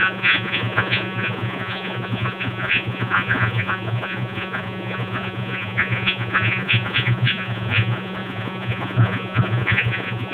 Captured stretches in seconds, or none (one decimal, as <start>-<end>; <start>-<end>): none